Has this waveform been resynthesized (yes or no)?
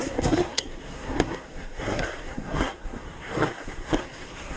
yes